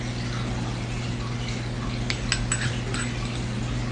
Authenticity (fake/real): real